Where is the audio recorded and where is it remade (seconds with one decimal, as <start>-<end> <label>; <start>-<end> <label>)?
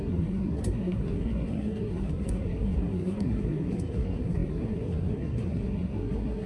0.0-6.5 remade